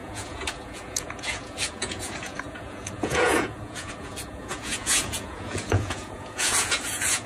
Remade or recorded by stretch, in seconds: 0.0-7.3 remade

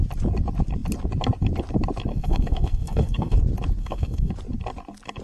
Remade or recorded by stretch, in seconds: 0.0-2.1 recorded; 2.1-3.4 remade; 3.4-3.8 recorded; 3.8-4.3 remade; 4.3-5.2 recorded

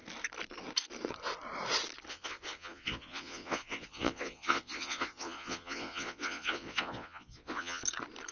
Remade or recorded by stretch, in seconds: 0.0-2.1 recorded; 2.1-7.8 remade; 7.8-8.3 recorded